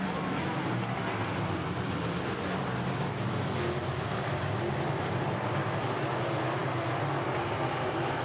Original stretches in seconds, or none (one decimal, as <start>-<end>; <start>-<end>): 0.0-8.2